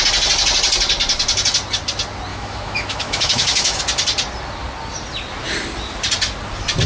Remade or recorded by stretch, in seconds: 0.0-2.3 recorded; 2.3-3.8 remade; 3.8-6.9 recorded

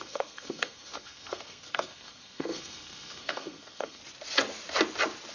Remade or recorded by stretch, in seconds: 0.0-4.0 remade; 4.0-5.3 recorded

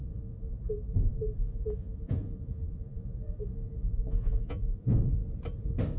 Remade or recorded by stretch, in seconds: 0.0-5.2 remade; 5.2-6.0 recorded